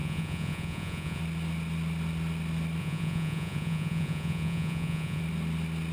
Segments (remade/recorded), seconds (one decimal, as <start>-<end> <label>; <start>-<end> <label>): 0.0-1.2 remade; 1.2-2.8 recorded; 2.8-5.2 remade; 5.2-5.9 recorded